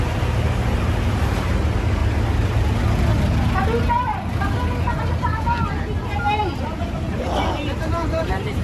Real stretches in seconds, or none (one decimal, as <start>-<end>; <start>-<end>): 2.0-6.9